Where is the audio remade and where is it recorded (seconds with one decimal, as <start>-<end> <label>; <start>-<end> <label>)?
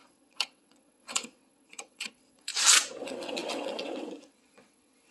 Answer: 0.0-2.5 remade; 2.5-3.0 recorded; 3.0-5.1 remade